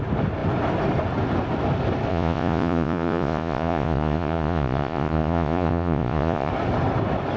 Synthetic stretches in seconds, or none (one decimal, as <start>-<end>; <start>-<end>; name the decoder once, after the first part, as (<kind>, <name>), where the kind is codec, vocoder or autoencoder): 2.1-6.5 (vocoder, Vocos)